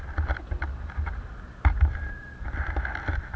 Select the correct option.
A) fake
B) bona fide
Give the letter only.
B